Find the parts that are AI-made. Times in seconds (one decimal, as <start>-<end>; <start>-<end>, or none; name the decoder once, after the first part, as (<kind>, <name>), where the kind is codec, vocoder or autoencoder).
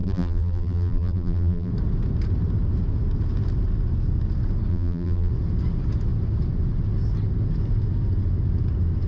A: 0.0-1.7 (vocoder, BigVGAN v2); 4.7-5.3